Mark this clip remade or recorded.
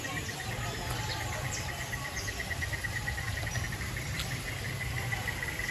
recorded